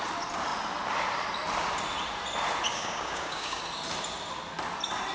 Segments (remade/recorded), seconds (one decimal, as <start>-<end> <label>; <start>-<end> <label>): 0.0-2.7 recorded; 2.7-3.6 remade; 3.6-5.1 recorded